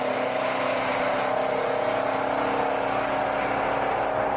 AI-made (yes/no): no